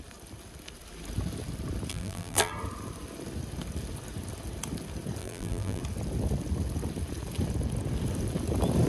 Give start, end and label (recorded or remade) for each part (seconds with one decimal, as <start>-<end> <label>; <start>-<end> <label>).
0.0-1.9 recorded; 1.9-2.5 remade; 2.5-5.2 recorded; 5.2-5.8 remade; 5.8-8.9 recorded